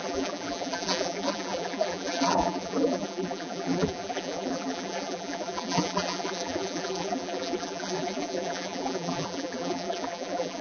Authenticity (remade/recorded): remade